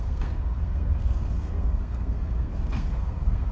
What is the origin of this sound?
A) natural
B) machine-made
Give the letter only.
B